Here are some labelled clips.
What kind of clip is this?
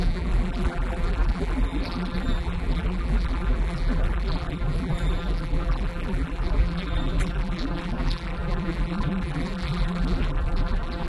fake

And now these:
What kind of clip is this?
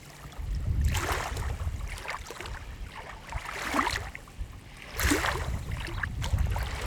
real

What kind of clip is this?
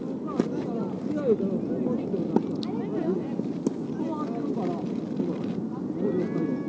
real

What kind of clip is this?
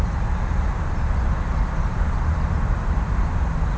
real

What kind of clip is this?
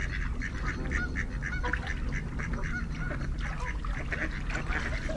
real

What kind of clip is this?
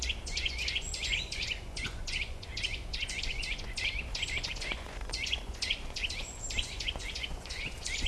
fake